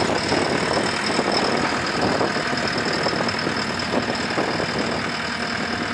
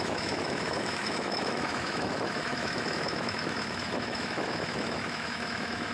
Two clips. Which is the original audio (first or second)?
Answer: first